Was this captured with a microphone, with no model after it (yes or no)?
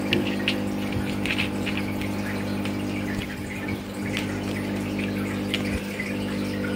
yes